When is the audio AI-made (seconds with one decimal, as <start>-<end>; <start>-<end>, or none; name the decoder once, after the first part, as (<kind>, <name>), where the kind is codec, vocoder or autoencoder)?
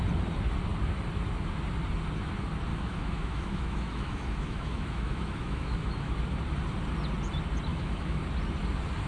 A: 2.7-6.1 (autoencoder, DAC-VAE); 7.7-8.2